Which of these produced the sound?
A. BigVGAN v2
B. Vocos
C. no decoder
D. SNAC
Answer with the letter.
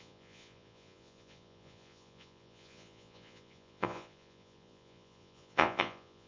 B